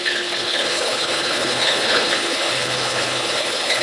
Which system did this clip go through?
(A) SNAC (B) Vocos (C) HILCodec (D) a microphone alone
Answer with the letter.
C